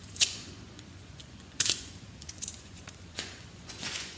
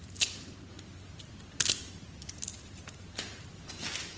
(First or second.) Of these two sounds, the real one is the second